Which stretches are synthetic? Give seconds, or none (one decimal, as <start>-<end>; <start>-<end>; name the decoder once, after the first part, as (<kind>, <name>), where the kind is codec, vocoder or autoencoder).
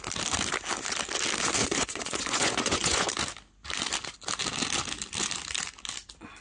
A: 1.6-3.1 (vocoder, Vocos)